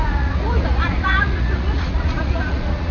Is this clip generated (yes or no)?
yes